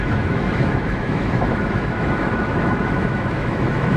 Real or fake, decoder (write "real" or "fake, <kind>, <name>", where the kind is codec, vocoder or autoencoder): fake, autoencoder, DAC-VAE